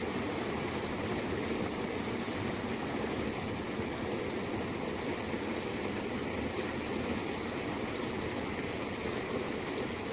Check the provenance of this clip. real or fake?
real